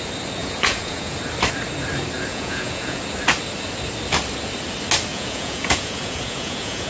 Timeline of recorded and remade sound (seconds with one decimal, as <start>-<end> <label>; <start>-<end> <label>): 0.0-0.4 recorded; 0.4-1.2 remade; 1.2-2.3 recorded; 2.3-3.0 remade; 3.0-5.1 recorded; 5.1-6.9 remade

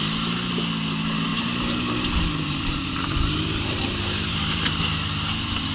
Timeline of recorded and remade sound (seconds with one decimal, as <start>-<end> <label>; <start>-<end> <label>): 0.0-1.3 recorded; 1.3-4.7 remade; 4.7-5.7 recorded

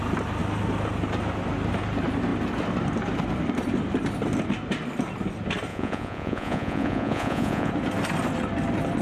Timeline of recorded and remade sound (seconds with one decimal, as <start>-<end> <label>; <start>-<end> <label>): 0.0-5.7 recorded; 5.7-7.7 remade; 7.7-9.0 recorded

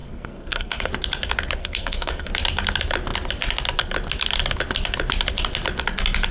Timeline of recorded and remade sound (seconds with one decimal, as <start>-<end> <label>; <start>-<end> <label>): 0.0-0.9 remade; 0.9-1.6 recorded; 1.6-2.3 remade; 2.3-6.3 recorded

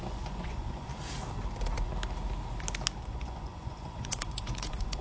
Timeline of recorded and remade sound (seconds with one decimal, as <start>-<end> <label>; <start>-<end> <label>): 0.0-0.9 remade; 0.9-3.0 recorded; 3.0-5.0 remade

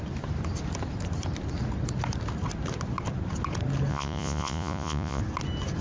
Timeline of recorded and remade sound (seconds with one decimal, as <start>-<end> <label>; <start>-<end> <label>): 0.0-3.9 recorded; 3.9-5.2 remade; 5.2-5.8 recorded

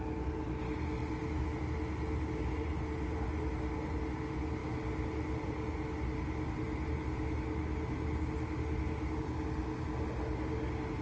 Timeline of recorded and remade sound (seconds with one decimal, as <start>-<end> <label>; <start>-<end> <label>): 0.0-11.0 recorded